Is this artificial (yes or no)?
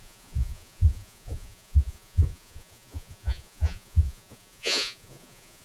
yes